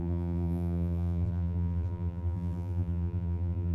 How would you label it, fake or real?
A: fake